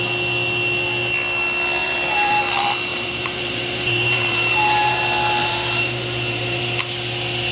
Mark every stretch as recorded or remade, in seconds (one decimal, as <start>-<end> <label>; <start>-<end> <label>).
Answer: 0.0-1.8 recorded; 1.8-2.4 remade; 2.4-2.9 recorded; 2.9-5.0 remade; 5.0-5.4 recorded; 5.4-6.6 remade; 6.6-7.5 recorded